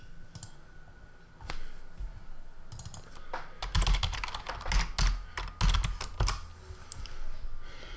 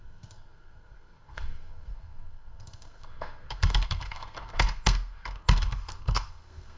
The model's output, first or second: second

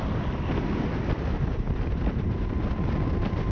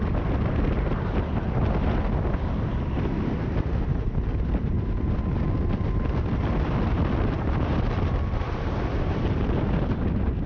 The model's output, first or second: first